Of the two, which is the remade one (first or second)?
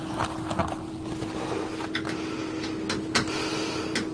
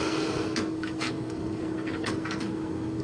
second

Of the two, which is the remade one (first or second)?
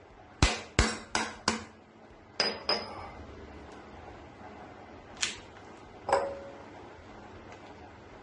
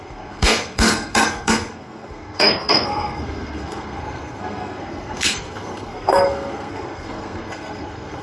second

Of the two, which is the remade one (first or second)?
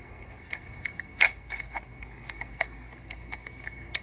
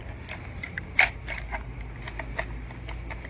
first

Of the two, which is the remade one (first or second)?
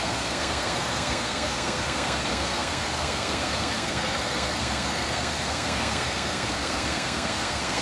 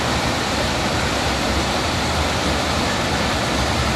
first